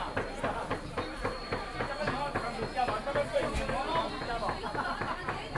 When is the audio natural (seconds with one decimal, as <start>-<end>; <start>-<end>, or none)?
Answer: 1.7-3.0